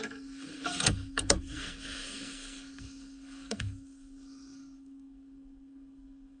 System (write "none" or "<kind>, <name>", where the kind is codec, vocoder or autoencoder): codec, SNAC